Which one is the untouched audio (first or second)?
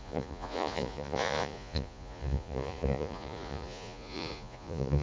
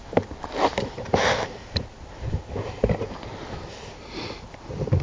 second